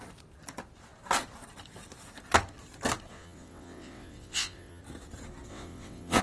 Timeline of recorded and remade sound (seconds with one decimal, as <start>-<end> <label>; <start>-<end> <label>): 0.0-3.1 recorded; 3.1-4.8 remade; 4.8-5.5 recorded; 5.5-6.2 remade